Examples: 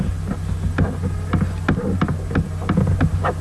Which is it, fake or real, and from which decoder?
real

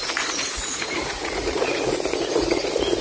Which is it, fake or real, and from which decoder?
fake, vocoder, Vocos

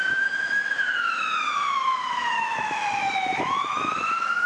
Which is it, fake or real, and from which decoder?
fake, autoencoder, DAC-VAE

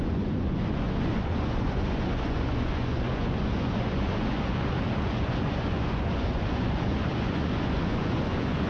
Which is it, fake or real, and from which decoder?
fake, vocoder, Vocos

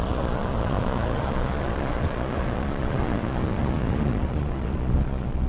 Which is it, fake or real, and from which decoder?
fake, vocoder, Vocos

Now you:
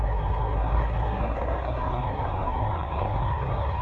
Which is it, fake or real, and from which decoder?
fake, codec, SNAC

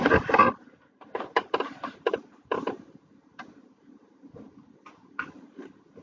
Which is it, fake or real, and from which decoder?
fake, vocoder, BigVGAN v2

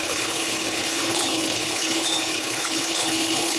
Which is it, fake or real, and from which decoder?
fake, codec, HILCodec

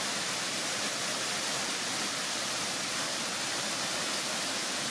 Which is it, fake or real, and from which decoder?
real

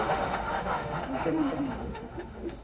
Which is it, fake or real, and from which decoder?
fake, autoencoder, DAC-VAE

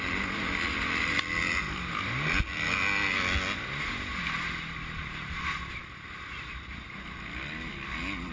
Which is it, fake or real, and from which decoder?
real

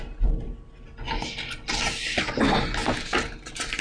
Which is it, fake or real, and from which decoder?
real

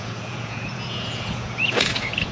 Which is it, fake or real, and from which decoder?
fake, vocoder, Vocos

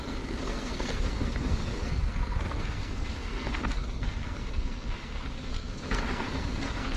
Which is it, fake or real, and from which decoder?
fake, codec, SNAC